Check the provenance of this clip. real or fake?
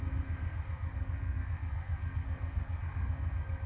fake